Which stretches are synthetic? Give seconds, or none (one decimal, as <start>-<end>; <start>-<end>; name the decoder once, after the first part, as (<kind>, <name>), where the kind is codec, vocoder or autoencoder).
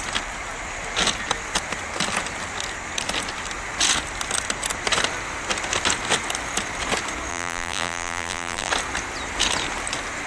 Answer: 7.3-8.7 (vocoder, BigVGAN v2)